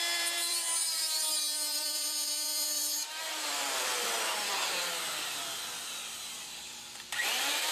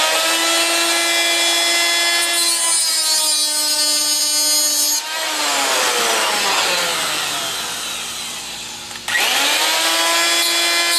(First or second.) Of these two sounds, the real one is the second